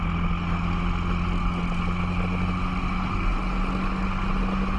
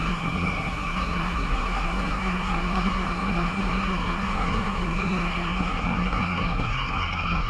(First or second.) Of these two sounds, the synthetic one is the second